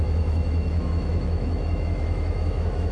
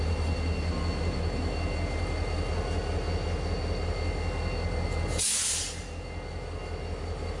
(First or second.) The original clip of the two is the second